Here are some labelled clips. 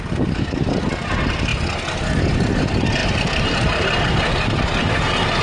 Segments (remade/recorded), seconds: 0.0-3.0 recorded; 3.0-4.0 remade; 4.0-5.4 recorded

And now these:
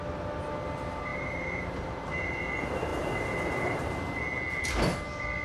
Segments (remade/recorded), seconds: 0.0-1.1 recorded; 1.1-2.5 remade; 2.5-5.4 recorded

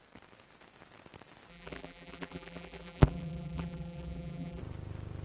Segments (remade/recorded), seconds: 0.0-1.5 recorded; 1.5-4.6 remade; 4.6-5.2 recorded

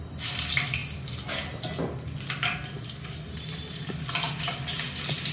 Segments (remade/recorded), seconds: 0.0-5.3 recorded

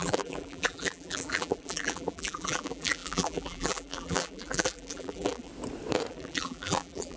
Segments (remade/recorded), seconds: 0.0-5.5 remade; 5.5-6.1 recorded; 6.1-7.2 remade

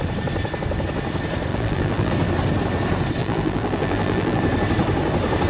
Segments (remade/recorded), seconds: 0.0-1.5 recorded; 1.5-2.1 remade; 2.1-3.2 recorded; 3.2-4.4 remade; 4.4-5.5 recorded